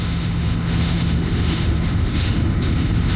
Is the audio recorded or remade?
remade